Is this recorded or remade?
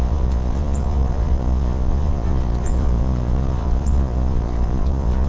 remade